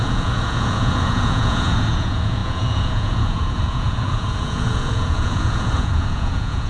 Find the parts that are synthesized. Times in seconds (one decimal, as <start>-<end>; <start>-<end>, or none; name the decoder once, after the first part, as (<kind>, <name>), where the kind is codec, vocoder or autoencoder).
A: 0.0-6.7 (vocoder, Vocos)